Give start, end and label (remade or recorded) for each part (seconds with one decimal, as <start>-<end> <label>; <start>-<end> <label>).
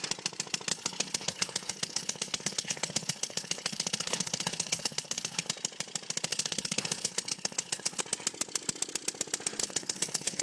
0.0-0.7 recorded; 0.7-5.5 remade; 5.5-6.3 recorded; 6.3-8.0 remade; 8.0-9.6 recorded; 9.6-10.4 remade